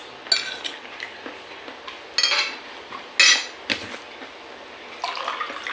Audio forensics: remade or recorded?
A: recorded